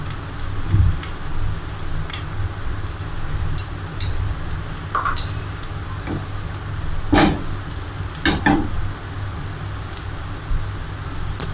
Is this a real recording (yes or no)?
yes